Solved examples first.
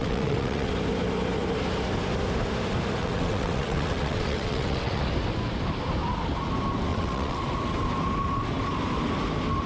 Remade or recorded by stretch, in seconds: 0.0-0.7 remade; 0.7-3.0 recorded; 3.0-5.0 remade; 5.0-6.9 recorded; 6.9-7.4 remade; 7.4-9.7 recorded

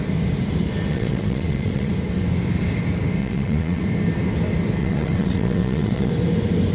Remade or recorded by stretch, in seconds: 0.0-0.9 recorded; 0.9-1.9 remade; 1.9-3.2 recorded; 3.2-3.8 remade; 3.8-4.8 recorded; 4.8-6.1 remade; 6.1-6.7 recorded